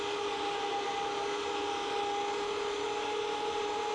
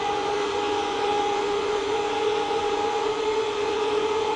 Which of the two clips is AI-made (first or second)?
second